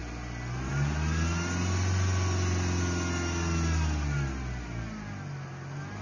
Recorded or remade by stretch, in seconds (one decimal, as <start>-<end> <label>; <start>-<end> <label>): 0.0-6.0 recorded